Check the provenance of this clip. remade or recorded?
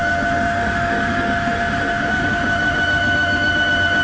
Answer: remade